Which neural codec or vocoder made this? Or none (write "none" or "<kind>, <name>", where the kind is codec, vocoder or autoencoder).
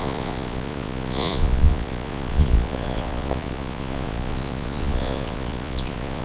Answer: vocoder, Vocos